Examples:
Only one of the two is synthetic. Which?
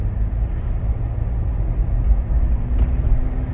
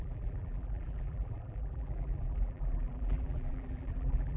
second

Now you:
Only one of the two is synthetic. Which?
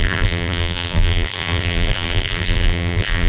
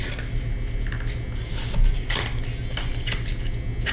first